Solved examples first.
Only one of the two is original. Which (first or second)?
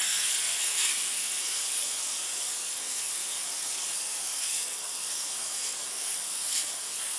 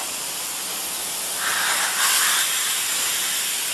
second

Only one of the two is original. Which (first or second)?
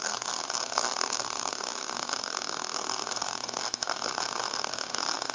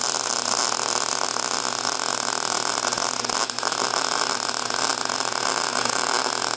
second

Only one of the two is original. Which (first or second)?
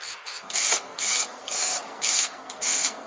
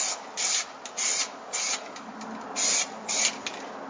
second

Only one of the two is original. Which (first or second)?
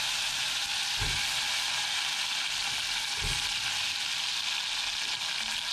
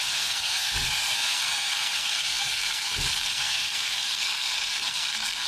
first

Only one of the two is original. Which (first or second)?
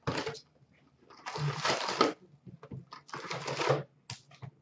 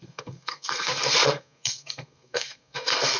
first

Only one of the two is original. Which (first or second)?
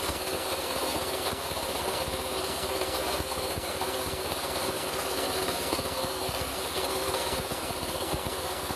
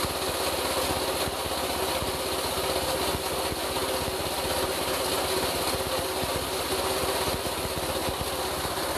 second